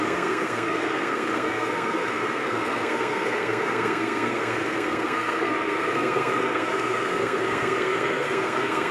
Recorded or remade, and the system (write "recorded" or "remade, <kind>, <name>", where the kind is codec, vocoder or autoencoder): remade, codec, SNAC